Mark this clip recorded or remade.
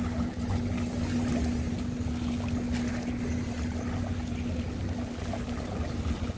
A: recorded